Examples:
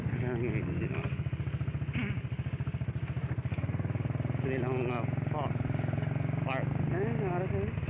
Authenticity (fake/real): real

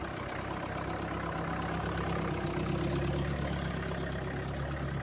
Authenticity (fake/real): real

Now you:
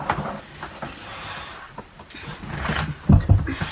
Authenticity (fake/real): real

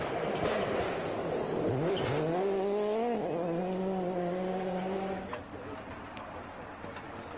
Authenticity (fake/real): real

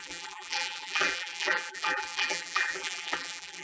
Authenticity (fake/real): fake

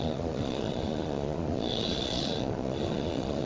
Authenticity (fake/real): fake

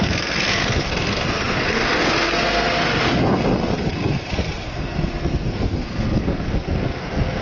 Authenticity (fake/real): fake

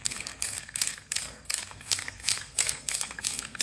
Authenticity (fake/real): fake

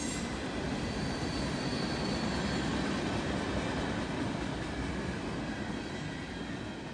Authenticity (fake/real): real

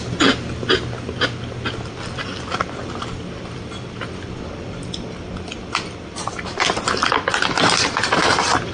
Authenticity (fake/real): real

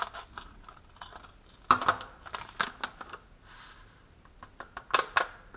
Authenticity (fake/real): real